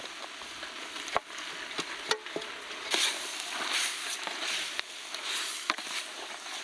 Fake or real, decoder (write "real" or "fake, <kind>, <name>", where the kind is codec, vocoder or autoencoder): real